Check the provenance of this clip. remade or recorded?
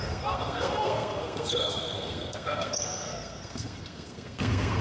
remade